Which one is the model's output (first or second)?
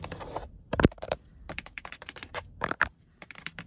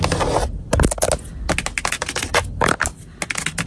first